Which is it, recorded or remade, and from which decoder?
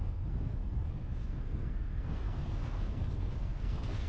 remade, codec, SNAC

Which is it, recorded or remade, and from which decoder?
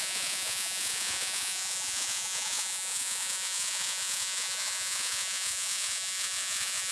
remade, vocoder, Vocos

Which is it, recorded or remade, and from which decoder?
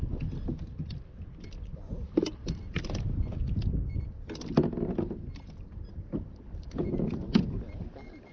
recorded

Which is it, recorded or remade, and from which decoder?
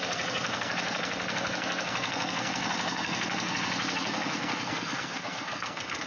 remade, codec, SNAC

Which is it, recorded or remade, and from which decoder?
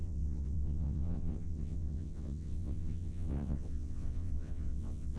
remade, vocoder, WaveNeXt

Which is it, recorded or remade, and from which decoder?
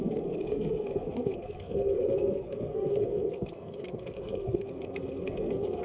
remade, codec, SNAC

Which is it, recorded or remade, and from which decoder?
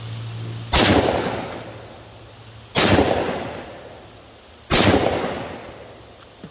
recorded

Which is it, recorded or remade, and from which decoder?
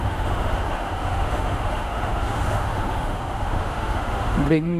remade, autoencoder, DAC-VAE